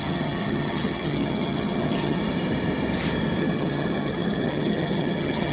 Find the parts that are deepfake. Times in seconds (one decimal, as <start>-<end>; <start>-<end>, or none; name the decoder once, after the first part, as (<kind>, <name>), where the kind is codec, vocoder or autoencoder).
0.0-2.2 (vocoder, HiFi-GAN); 3.4-5.5